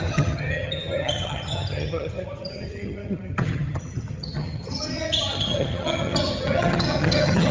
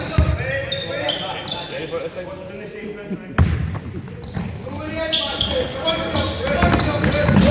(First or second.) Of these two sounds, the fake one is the first